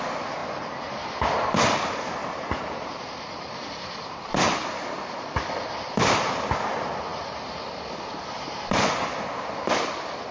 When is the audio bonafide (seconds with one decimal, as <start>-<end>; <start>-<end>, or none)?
0.0-2.2; 3.6-10.3